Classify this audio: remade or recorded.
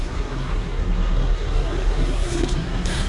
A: remade